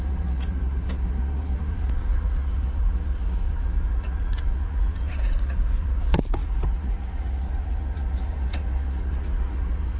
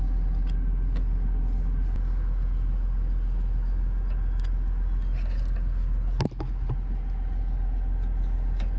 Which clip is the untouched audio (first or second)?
second